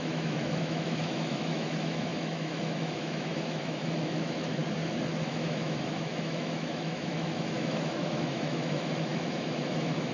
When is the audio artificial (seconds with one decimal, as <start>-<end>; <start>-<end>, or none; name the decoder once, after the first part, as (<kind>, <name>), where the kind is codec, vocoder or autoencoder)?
0.0-4.6 (autoencoder, DAC-VAE); 5.1-10.1